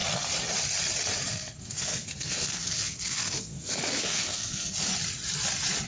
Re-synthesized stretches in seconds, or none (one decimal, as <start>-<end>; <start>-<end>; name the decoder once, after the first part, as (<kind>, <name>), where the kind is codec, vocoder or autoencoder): 1.3-4.8 (codec, SNAC)